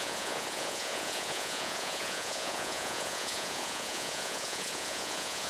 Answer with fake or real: fake